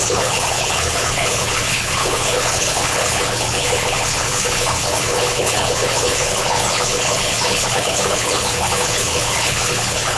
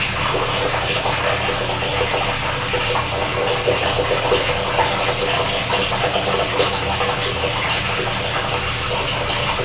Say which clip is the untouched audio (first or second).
second